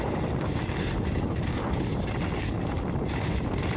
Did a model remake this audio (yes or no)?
no